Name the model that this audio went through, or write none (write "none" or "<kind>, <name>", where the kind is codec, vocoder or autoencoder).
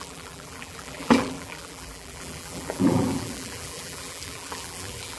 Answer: vocoder, BigVGAN v2